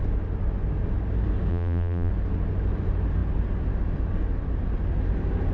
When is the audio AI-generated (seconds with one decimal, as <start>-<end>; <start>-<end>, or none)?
1.5-2.1